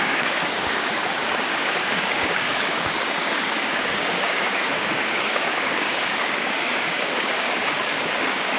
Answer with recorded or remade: remade